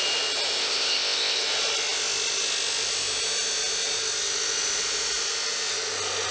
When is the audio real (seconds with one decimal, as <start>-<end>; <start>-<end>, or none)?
0.0-0.6; 1.4-6.3